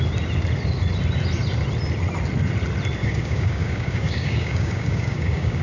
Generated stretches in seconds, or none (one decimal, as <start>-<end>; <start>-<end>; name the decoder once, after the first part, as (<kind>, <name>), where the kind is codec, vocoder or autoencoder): 3.0-5.6 (codec, DAC)